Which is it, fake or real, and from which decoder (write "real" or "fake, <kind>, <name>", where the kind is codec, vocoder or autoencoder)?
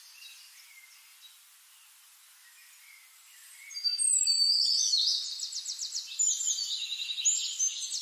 real